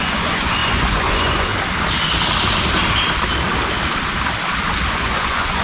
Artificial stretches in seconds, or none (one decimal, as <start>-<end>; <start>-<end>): 0.0-1.5; 4.9-5.6